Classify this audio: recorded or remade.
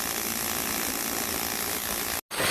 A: recorded